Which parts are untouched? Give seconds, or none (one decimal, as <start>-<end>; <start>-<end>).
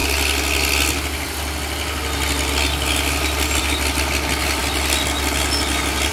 0.0-6.1